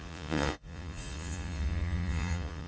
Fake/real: fake